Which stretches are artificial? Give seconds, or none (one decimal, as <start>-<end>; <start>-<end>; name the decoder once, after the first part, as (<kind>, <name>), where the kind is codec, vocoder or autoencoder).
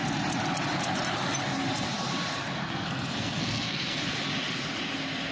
2.6-4.0 (codec, SNAC)